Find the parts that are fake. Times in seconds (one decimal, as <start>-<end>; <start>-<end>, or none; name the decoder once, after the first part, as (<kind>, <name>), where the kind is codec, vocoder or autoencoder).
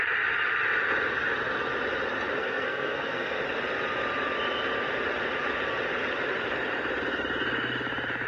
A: 2.4-3.4 (codec, SNAC)